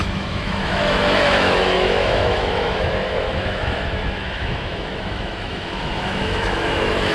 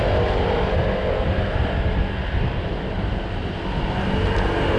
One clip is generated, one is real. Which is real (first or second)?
second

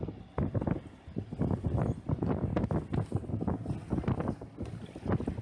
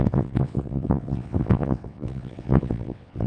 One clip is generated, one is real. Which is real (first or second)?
first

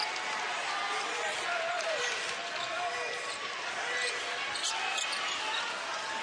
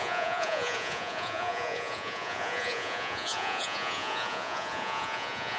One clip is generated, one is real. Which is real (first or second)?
first